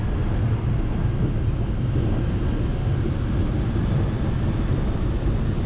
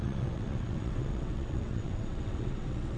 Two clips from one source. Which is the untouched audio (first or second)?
first